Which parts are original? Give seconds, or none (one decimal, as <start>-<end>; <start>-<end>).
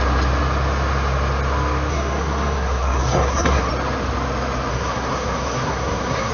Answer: 0.0-1.9; 3.7-4.7